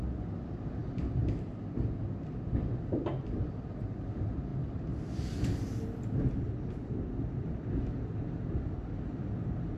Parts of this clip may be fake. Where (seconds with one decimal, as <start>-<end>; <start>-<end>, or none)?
none